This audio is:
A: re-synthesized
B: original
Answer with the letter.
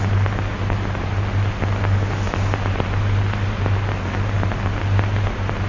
B